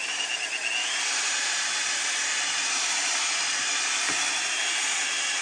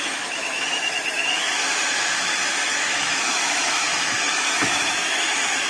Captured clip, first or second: first